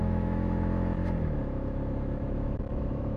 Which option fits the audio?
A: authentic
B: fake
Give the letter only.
B